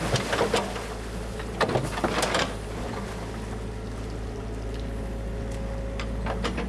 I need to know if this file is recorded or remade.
recorded